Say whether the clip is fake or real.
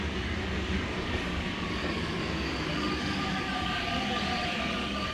fake